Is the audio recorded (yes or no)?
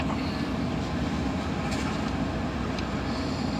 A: yes